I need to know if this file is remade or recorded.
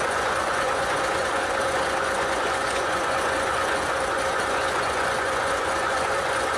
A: remade